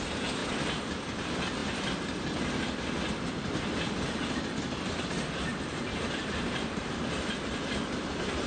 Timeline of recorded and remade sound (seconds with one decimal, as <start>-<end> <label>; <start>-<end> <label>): 0.0-5.5 recorded; 5.5-7.1 remade; 7.1-8.5 recorded

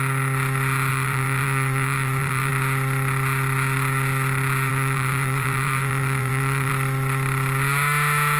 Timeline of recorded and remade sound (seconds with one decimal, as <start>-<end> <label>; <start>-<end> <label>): 0.0-0.9 recorded; 0.9-2.5 remade; 2.5-4.7 recorded; 4.7-6.7 remade; 6.7-8.4 recorded

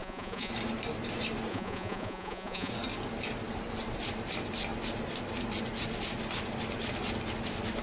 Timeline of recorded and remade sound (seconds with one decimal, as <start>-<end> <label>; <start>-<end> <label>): 0.0-0.5 remade; 0.5-1.5 recorded; 1.5-2.7 remade; 2.7-7.8 recorded

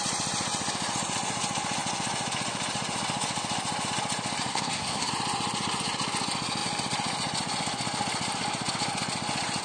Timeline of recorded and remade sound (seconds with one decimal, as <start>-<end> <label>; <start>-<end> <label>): 0.0-4.5 recorded; 4.5-5.1 remade; 5.1-9.6 recorded

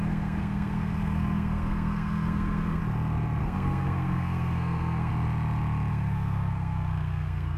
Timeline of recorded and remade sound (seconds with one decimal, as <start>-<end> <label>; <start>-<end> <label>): 0.0-2.8 remade; 2.8-3.4 recorded; 3.4-5.1 remade; 5.1-5.9 recorded; 5.9-7.6 remade

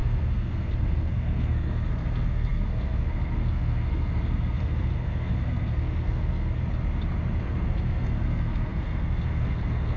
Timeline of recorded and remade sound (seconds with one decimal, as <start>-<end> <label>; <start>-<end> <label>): 0.0-6.6 remade; 6.6-7.4 recorded; 7.4-10.0 remade